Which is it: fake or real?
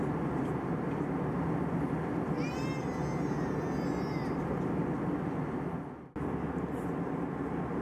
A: real